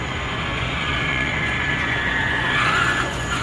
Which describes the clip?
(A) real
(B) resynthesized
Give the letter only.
B